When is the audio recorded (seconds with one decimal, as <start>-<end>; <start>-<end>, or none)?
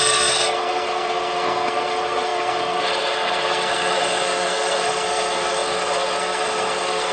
none